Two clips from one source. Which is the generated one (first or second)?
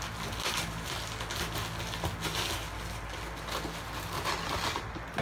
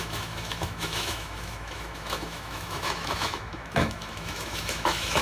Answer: second